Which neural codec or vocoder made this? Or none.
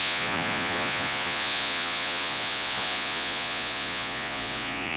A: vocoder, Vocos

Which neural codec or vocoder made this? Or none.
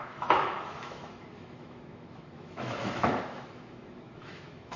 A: autoencoder, DAC-VAE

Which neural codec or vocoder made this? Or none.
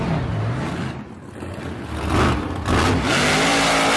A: none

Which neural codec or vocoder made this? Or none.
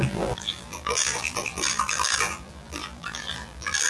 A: vocoder, BigVGAN v2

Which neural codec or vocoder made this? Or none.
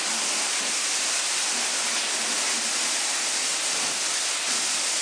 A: none